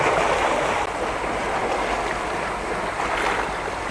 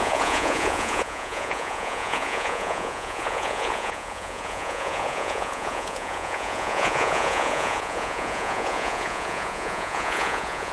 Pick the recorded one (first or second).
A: first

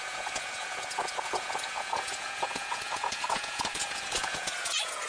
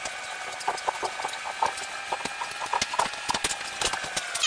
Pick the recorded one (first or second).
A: second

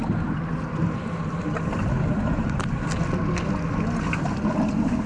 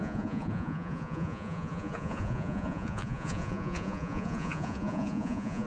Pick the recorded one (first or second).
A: first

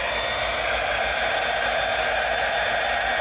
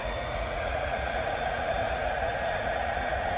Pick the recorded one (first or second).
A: first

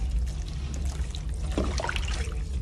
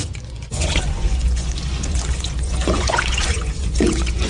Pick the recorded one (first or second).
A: first